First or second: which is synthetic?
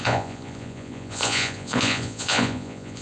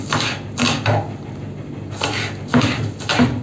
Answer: first